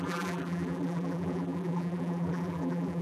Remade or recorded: remade